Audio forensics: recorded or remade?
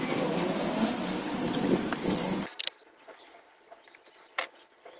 recorded